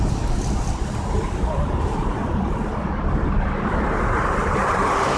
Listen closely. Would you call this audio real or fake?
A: fake